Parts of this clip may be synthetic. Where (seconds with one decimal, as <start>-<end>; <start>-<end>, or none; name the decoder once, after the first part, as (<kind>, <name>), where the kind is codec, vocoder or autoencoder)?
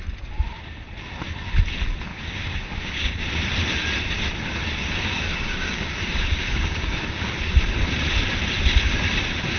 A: 2.1-3.2 (codec, DAC); 4.8-7.3